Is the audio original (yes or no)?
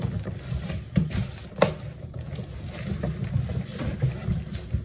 yes